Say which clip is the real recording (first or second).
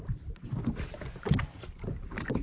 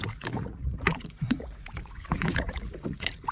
first